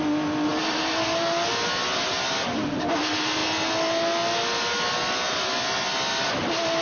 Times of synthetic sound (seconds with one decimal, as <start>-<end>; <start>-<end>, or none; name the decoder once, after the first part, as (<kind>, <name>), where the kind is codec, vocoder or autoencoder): none

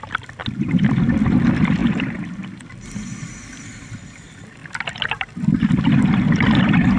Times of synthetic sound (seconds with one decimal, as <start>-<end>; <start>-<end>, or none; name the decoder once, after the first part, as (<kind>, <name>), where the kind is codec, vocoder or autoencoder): 0.0-4.6 (vocoder, BigVGAN v2); 6.0-7.0

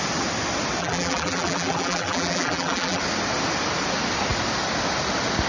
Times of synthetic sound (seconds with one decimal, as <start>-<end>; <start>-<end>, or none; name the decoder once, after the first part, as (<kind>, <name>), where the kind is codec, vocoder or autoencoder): 0.8-3.0 (vocoder, BigVGAN v2)

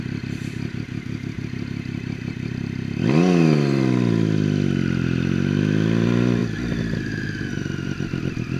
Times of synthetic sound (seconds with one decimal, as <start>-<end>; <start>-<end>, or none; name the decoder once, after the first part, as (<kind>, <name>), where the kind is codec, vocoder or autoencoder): none

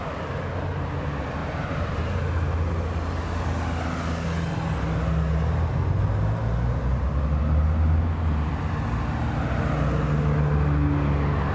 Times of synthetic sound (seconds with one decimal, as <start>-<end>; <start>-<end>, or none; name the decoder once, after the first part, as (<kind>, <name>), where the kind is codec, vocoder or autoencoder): 1.4-2.2 (vocoder, BigVGAN v2)

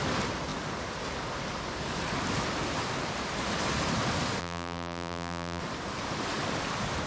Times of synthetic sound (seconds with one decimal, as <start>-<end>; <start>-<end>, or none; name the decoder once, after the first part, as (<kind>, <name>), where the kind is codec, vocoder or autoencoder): 4.4-5.6 (vocoder, BigVGAN v2)